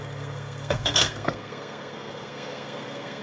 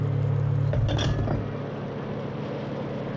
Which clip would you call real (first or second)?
second